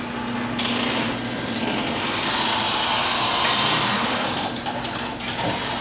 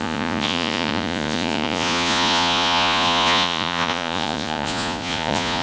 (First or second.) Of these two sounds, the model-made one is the second